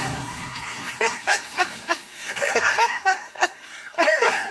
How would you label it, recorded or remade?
remade